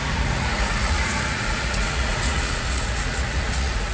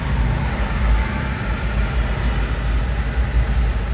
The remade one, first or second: first